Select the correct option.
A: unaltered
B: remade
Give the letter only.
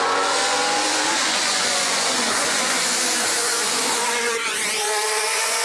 B